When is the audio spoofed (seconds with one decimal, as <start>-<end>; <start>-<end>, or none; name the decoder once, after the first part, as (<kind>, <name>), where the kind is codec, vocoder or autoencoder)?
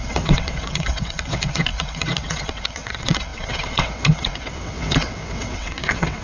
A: 0.0-6.2 (vocoder, WaveNeXt)